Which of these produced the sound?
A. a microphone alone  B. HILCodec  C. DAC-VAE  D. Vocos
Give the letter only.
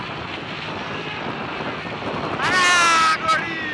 A